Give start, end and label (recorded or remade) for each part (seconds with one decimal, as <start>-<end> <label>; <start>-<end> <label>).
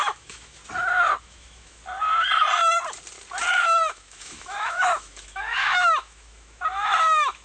0.0-0.6 remade; 0.6-1.2 recorded; 1.2-1.8 remade; 1.8-3.5 recorded; 3.5-7.4 remade